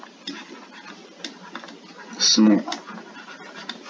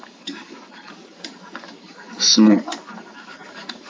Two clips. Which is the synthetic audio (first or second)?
second